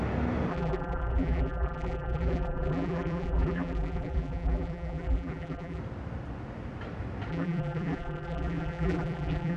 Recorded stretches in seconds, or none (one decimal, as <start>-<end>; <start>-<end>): 0.0-0.5; 5.8-7.3